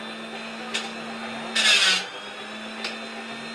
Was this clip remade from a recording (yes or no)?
no